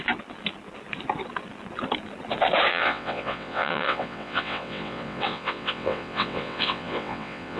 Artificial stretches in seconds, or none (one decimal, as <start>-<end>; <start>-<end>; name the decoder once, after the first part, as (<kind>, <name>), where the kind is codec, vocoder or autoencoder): 2.7-7.6 (vocoder, WaveNeXt)